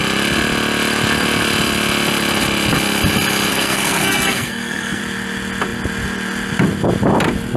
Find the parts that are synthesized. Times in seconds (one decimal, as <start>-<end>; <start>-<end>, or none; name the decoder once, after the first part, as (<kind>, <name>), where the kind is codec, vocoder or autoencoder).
3.5-5.0 (codec, SNAC)